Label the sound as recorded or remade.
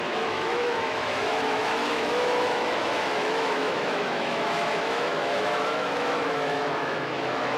remade